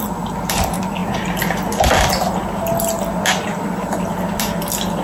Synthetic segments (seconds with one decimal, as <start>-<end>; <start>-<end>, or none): none